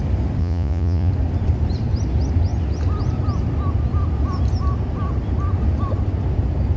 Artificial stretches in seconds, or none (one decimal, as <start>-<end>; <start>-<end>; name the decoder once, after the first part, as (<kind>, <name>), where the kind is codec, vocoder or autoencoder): 0.4-1.1 (vocoder, Vocos)